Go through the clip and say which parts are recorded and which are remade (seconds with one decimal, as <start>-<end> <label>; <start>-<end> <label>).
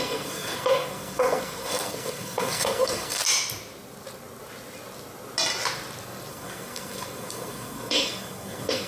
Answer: 0.0-3.2 remade; 3.2-6.3 recorded; 6.3-8.9 remade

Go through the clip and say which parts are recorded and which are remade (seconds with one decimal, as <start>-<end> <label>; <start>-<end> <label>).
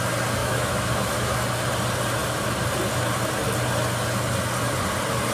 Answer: 0.0-0.4 recorded; 0.4-1.3 remade; 1.3-5.3 recorded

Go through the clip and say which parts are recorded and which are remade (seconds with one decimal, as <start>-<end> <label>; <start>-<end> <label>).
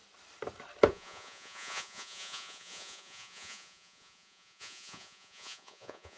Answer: 0.0-0.9 recorded; 0.9-6.2 remade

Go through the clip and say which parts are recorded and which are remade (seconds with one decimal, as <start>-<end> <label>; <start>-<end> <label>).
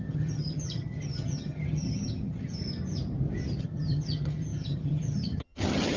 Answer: 0.0-2.6 remade; 2.6-3.6 recorded; 3.6-6.0 remade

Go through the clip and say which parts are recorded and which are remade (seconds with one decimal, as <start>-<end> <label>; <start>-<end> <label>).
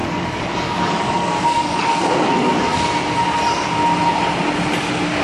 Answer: 0.0-2.7 remade; 2.7-5.2 recorded